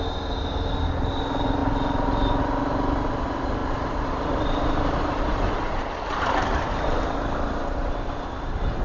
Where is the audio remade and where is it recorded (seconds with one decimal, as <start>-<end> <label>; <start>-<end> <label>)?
0.0-3.6 recorded; 3.6-8.3 remade; 8.3-8.8 recorded